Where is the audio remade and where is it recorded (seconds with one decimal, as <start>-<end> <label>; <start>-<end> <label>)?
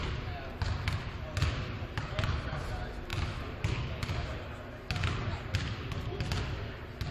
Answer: 0.0-7.1 recorded